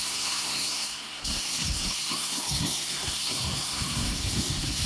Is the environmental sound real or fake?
fake